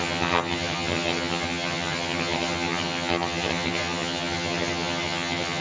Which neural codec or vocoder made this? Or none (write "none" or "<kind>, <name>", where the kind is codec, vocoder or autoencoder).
vocoder, HiFi-GAN